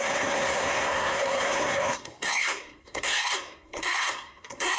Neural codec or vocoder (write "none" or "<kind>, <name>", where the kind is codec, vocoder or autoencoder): codec, SNAC